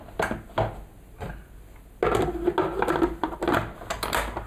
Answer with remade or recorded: recorded